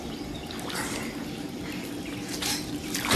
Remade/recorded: recorded